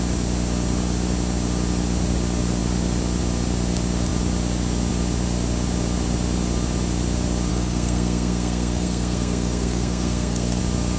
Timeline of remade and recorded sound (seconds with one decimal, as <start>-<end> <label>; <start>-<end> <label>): 0.0-7.5 recorded; 7.5-10.6 remade; 10.6-11.0 recorded